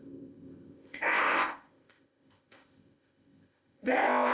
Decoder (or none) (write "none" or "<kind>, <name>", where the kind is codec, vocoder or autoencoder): codec, ZipCodec